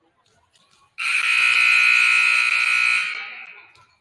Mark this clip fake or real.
real